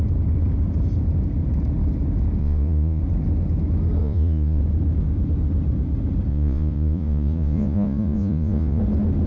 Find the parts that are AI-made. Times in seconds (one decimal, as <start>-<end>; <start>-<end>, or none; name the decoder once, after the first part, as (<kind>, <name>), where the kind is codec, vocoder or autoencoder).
2.4-3.0 (vocoder, Vocos); 4.0-4.6; 6.3-8.8